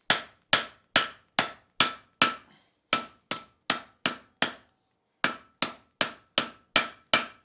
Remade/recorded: recorded